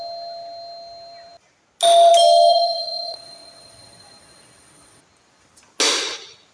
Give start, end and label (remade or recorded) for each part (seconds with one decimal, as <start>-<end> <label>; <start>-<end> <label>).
0.0-2.5 recorded; 2.5-5.0 remade; 5.0-6.5 recorded